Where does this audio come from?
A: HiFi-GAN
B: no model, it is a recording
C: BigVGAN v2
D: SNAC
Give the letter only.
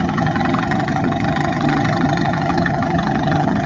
A